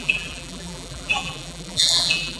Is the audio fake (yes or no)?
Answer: yes